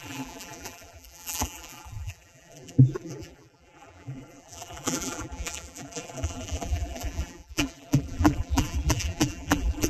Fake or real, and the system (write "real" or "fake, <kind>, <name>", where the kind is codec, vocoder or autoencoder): fake, vocoder, BigVGAN v2